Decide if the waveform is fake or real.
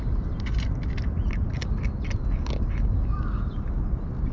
real